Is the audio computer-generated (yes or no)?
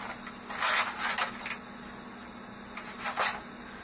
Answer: no